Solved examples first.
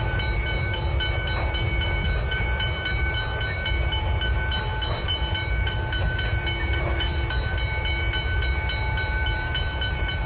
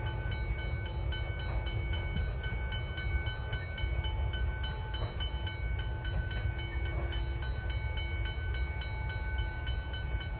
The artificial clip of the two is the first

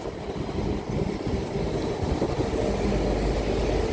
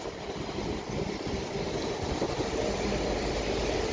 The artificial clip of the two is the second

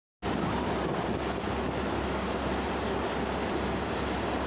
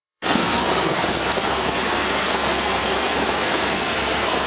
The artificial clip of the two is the second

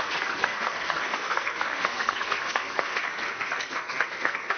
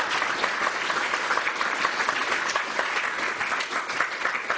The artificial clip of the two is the first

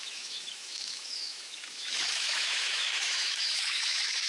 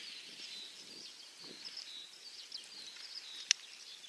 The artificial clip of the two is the first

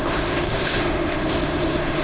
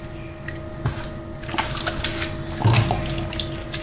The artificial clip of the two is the first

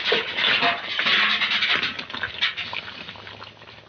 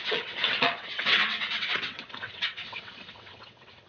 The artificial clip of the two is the second